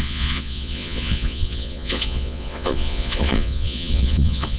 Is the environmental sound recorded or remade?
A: remade